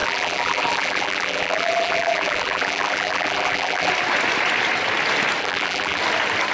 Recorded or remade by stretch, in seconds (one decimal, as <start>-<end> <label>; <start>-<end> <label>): 0.0-3.9 remade; 3.9-5.4 recorded; 5.4-6.0 remade; 6.0-6.5 recorded